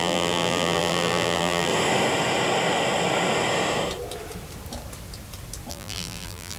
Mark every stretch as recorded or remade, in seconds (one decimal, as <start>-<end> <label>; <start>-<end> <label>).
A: 0.0-1.7 remade; 1.7-5.7 recorded; 5.7-6.6 remade